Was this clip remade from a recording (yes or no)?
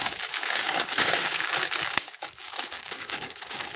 yes